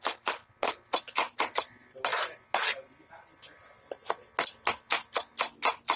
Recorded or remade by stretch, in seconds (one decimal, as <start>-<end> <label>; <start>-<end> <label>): 0.0-6.0 recorded